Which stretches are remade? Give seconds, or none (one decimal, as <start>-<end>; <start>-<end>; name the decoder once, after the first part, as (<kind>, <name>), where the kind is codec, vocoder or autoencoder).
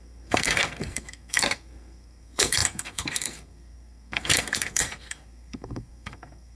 0.0-6.6 (codec, SNAC)